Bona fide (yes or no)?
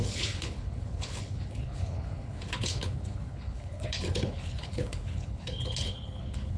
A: no